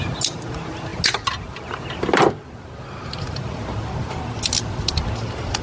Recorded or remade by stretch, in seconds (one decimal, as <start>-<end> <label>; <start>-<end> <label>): 0.0-5.6 recorded